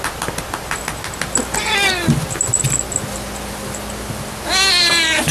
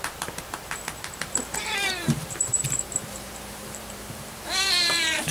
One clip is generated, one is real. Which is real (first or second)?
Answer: first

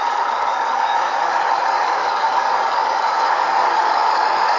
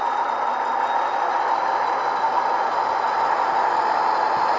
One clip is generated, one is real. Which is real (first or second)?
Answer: second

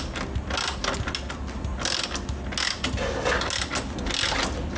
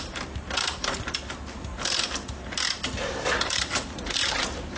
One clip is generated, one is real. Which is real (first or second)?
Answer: first